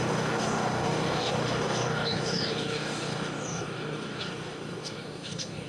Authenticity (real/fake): fake